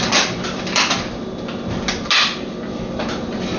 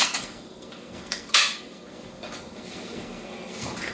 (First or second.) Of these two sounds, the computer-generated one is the second